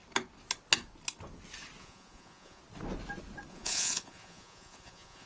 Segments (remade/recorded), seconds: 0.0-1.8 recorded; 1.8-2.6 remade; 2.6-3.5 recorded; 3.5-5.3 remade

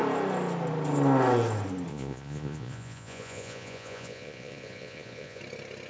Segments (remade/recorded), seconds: 0.0-1.9 recorded; 1.9-5.4 remade; 5.4-5.9 recorded

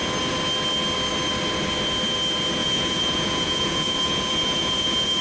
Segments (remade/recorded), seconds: 0.0-2.6 recorded; 2.6-5.2 remade

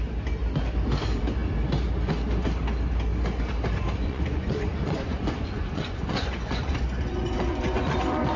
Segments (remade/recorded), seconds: 0.0-4.0 recorded; 4.0-8.4 remade

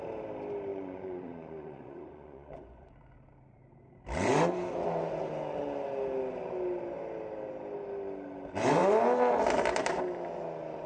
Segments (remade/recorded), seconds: 0.0-0.7 recorded; 0.7-3.3 remade; 3.3-10.9 recorded

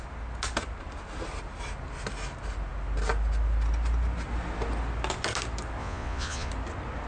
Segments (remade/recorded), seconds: 0.0-5.8 recorded; 5.8-6.5 remade; 6.5-7.1 recorded

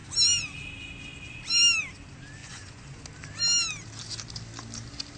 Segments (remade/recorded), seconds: 0.0-2.4 recorded; 2.4-3.0 remade; 3.0-5.2 recorded

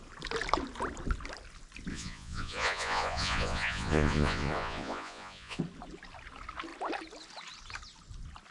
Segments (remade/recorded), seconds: 0.0-1.9 recorded; 1.9-5.6 remade; 5.6-8.5 recorded